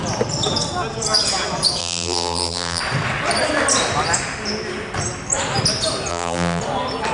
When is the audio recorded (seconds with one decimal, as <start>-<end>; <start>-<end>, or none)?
0.0-1.8; 2.8-6.1; 6.6-7.1

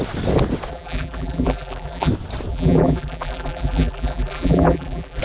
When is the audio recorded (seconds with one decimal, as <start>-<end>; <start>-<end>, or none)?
0.0-0.7; 2.1-2.5

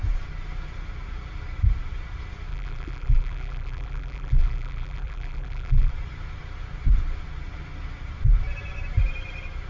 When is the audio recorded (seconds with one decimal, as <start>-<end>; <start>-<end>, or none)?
0.0-2.5; 5.9-9.7

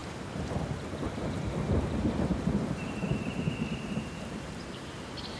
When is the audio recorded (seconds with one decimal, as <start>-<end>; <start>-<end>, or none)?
0.7-2.3

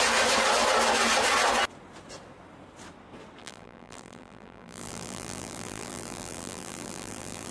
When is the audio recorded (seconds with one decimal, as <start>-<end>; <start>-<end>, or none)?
0.0-3.4

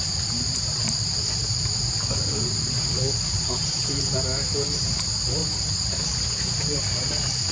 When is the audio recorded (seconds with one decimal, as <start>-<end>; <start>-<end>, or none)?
0.0-0.7; 3.4-7.5

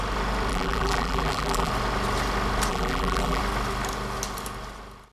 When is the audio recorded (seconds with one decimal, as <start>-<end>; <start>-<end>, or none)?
0.0-0.5; 1.7-2.7; 3.4-5.1

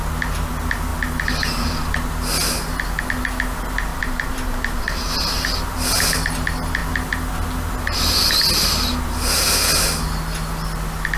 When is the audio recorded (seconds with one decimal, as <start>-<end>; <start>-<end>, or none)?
0.0-3.9; 5.1-11.2